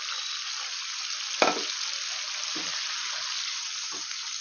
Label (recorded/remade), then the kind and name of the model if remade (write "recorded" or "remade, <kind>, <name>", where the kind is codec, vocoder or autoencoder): recorded